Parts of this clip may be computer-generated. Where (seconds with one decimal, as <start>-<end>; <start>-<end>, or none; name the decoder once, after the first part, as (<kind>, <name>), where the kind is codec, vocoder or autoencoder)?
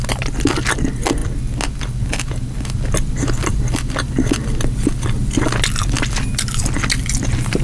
3.4-4.1 (vocoder, BigVGAN v2)